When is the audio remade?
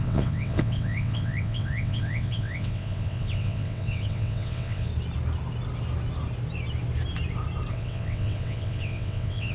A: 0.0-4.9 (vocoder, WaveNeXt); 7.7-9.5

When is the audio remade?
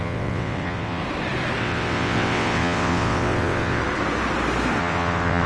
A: 0.0-1.0 (vocoder, WaveNeXt); 1.6-3.8; 4.8-5.5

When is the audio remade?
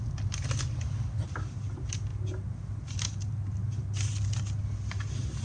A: none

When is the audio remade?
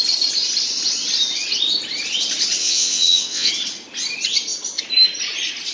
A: 2.6-3.5 (vocoder, WaveNeXt)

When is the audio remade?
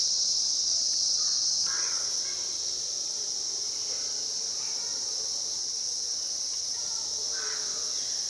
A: 0.0-2.2 (vocoder, WaveNeXt); 5.6-6.8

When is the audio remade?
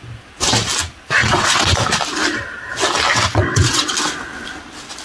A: 1.2-1.8 (vocoder, WaveNeXt); 3.1-3.9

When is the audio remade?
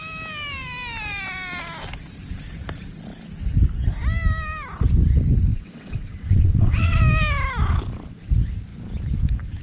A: 5.5-7.0 (vocoder, WaveNeXt)